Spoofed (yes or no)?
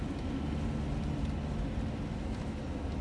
no